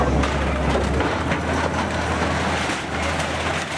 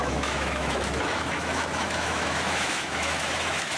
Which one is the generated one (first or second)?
second